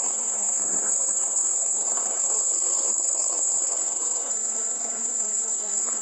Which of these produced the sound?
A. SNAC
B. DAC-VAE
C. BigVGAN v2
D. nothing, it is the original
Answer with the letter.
A